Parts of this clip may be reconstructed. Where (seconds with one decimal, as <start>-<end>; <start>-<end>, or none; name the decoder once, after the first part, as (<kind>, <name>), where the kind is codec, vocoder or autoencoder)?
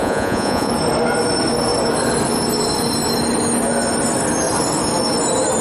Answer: 0.0-0.7 (vocoder, Vocos)